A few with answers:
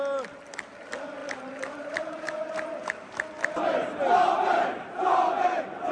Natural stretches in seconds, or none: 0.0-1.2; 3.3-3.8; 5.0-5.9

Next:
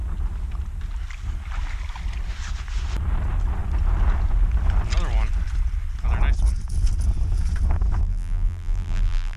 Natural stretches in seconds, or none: 0.0-8.0

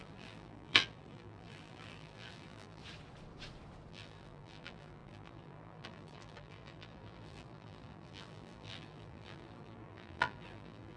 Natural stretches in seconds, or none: 2.8-3.9

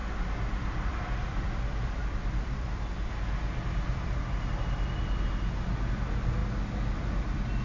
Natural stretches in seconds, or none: 3.1-7.6